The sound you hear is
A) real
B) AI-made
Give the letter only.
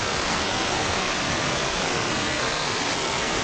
B